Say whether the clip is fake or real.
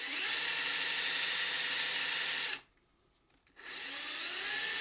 real